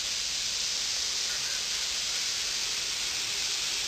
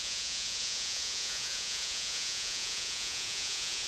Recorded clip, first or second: first